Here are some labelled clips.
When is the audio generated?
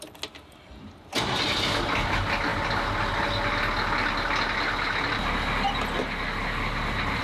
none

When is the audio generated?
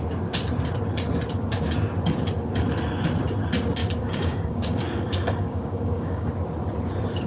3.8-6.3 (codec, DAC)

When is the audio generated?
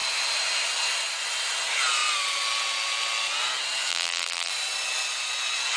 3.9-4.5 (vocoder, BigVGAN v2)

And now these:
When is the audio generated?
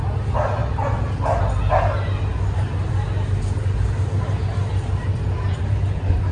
none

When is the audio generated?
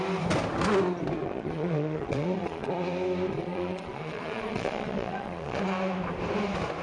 1.2-2.7 (vocoder, Vocos); 3.3-5.6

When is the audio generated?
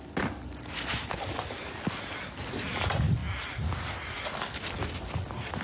none